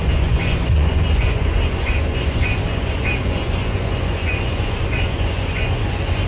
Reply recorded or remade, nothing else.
remade